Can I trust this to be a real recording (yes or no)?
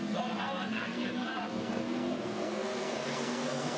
no